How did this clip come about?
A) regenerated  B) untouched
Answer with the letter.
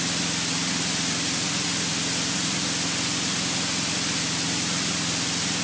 B